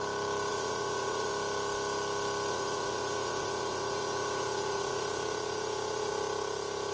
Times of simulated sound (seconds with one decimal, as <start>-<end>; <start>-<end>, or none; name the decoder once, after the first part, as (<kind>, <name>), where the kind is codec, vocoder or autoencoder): 0.5-1.3 (vocoder, Vocos); 2.5-6.1